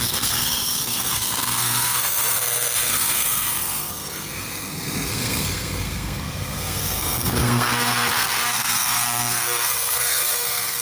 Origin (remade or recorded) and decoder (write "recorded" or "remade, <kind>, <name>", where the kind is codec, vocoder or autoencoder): remade, codec, SNAC